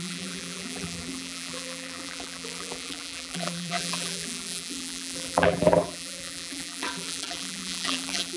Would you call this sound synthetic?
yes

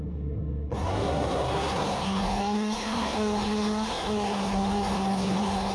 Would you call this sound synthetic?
yes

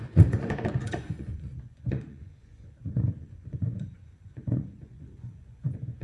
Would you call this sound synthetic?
yes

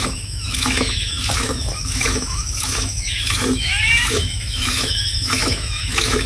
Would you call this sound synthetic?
yes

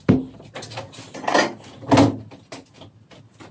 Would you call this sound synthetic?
no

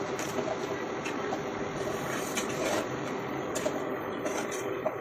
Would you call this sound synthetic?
yes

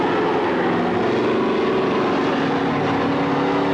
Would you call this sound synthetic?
no